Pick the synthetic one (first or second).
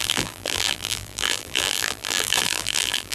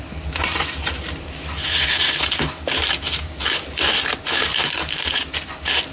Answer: first